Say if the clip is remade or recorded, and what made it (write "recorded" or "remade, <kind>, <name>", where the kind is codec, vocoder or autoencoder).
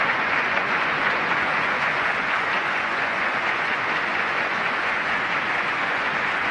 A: remade, vocoder, Vocos